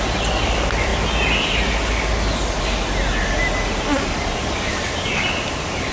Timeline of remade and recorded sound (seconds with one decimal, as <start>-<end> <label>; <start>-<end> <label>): 0.0-5.9 recorded